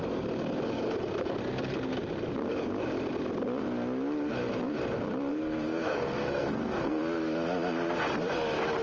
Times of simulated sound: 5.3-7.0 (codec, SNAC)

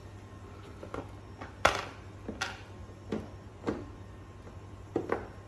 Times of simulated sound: none

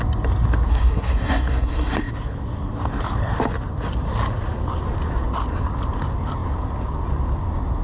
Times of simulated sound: 0.7-2.1 (codec, SNAC)

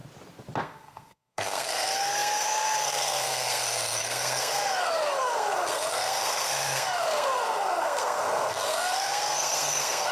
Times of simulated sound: 0.6-10.1 (codec, SNAC)

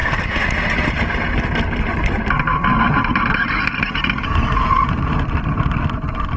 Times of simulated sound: none

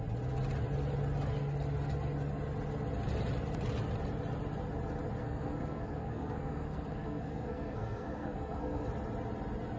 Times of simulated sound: 5.2-8.9 (codec, SNAC)

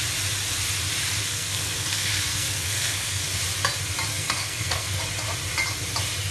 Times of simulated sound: 1.2-3.4 (codec, SNAC); 4.1-5.0